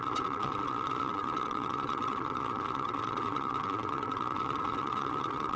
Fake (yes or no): yes